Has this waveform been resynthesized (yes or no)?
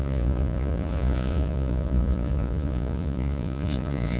yes